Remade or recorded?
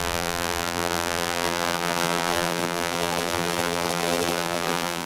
remade